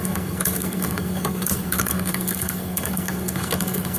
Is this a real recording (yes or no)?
no